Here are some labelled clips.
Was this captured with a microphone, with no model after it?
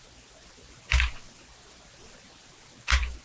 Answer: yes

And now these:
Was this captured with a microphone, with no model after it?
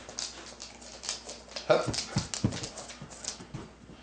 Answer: yes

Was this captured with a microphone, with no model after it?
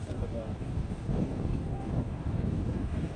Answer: no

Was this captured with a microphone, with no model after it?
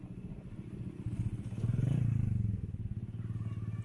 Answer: yes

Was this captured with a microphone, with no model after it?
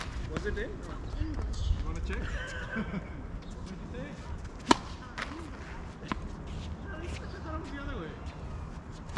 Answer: yes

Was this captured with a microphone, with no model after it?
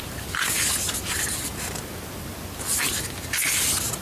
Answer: yes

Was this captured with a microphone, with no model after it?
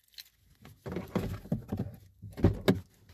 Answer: yes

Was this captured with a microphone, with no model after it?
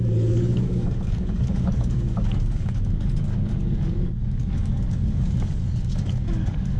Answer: no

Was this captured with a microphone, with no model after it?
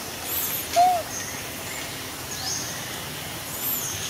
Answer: yes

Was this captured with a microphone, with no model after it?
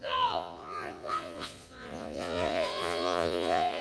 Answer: no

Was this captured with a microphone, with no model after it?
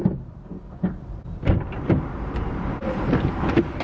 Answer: no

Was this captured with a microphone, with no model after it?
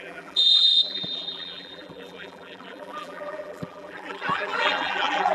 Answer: no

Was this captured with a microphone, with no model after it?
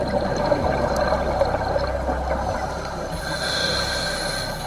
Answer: yes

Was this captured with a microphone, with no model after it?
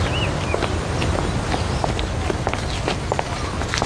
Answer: yes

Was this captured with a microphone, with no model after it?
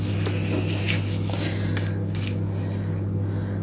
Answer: yes